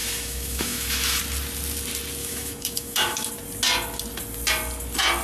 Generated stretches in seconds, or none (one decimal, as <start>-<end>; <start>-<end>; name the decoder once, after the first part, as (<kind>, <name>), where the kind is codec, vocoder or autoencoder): 0.0-1.2 (autoencoder, DAC-VAE); 2.2-3.3